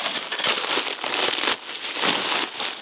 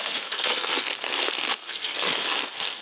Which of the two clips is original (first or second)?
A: first